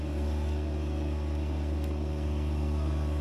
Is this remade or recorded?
remade